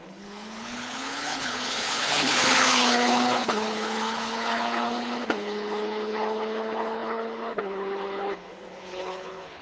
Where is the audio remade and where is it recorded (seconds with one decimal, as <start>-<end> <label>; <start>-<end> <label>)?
0.0-9.6 remade